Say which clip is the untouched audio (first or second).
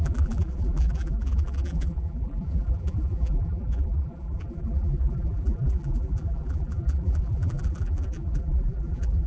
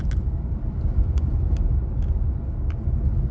second